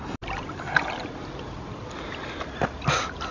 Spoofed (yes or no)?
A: no